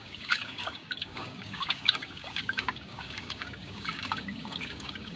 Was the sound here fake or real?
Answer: fake